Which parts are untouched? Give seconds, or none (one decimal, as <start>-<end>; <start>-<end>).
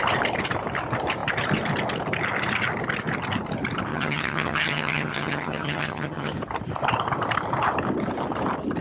0.0-3.9; 6.3-8.8